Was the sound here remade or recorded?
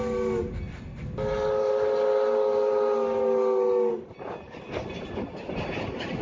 recorded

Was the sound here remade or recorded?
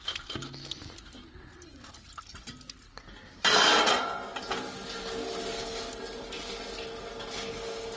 recorded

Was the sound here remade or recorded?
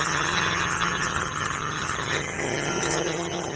remade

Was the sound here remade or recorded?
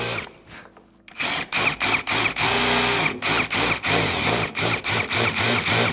recorded